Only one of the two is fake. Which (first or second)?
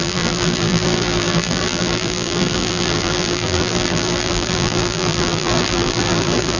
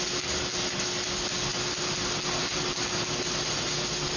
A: first